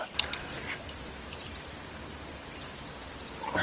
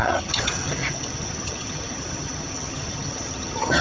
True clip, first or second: first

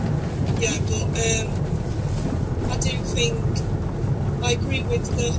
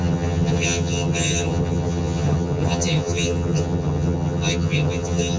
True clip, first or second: first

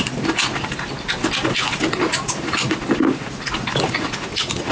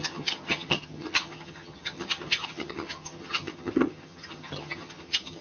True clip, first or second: first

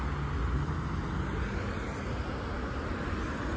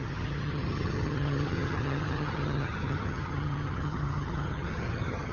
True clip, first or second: first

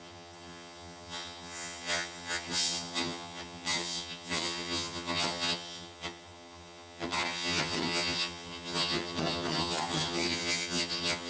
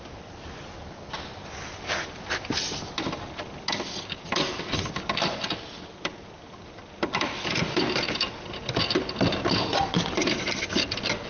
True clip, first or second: second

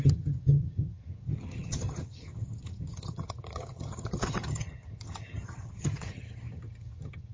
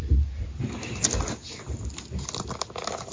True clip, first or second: second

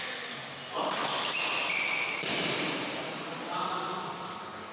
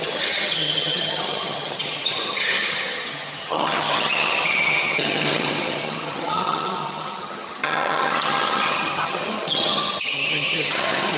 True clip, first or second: first